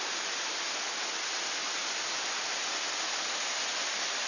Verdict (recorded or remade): recorded